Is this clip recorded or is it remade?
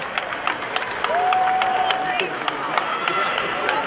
recorded